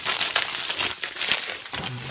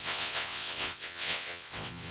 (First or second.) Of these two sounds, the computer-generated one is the second